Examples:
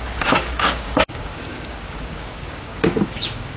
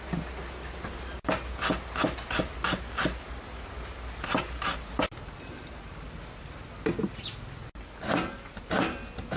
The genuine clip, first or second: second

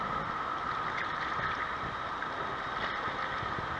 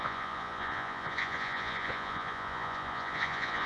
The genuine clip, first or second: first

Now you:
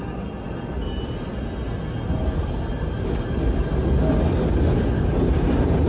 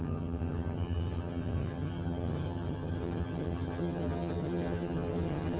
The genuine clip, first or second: first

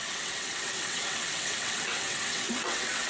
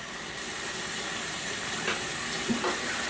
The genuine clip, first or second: second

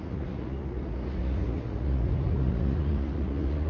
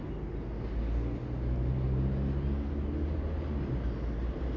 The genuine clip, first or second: second